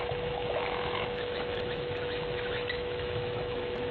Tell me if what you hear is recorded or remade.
remade